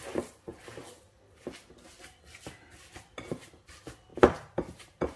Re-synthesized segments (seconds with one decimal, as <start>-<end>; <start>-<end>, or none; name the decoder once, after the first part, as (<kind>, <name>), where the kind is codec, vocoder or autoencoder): 4.1-5.2 (vocoder, BigVGAN v2)